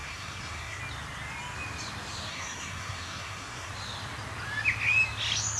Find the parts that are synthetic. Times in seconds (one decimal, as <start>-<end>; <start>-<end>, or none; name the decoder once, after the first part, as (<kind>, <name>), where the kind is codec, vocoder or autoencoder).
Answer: 0.0-0.8 (codec, SNAC); 2.3-3.7

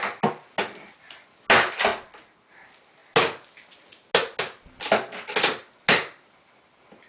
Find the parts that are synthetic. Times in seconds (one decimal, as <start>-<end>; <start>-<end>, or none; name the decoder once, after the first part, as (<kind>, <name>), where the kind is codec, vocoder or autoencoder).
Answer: none

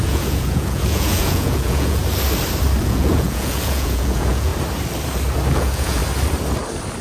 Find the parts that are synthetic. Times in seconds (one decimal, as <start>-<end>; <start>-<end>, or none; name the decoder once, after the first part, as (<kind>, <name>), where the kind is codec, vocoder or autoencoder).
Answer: 0.0-2.0 (vocoder, Vocos); 2.8-4.5; 5.5-6.0